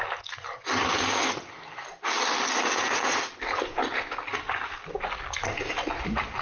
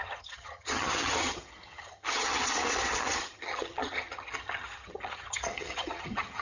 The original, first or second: first